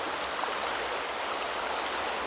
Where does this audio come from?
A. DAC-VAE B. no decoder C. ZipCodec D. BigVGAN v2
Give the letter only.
D